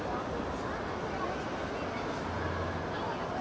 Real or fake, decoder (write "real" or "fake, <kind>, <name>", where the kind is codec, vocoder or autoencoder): real